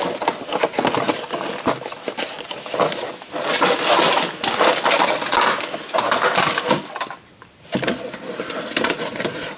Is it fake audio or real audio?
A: real